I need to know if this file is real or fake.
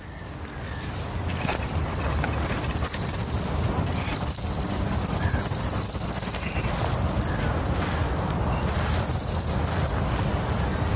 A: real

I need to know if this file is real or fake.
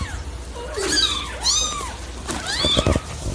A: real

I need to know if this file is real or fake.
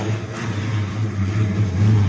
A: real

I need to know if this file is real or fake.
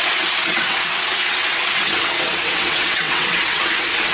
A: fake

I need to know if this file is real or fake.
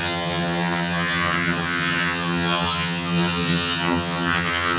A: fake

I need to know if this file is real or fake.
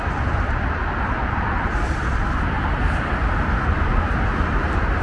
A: real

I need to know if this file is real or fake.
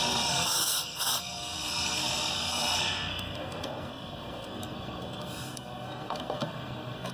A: fake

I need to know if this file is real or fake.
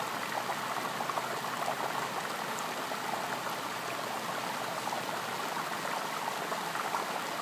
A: real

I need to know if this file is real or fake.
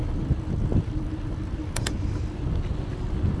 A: real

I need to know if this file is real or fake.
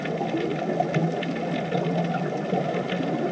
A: real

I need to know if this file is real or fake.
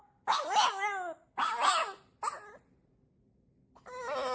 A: real